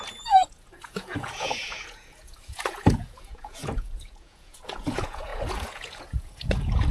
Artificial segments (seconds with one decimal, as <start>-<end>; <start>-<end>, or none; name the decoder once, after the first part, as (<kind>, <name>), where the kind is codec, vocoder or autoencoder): 0.0-6.9 (vocoder, Vocos)